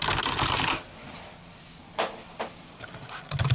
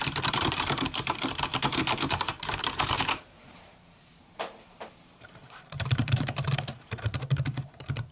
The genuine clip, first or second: first